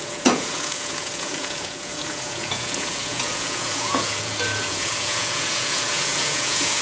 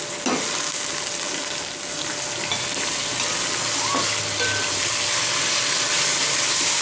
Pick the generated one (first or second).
first